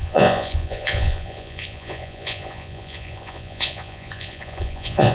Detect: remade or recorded remade